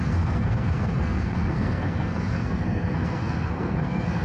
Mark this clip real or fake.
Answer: fake